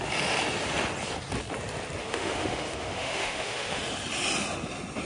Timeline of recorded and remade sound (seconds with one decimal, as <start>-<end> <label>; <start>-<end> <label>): 0.0-2.1 recorded; 2.1-3.8 remade; 3.8-5.1 recorded